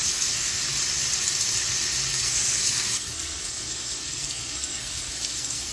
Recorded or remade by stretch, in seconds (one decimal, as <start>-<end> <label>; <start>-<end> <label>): 0.0-0.6 remade; 0.6-2.1 recorded; 2.1-5.7 remade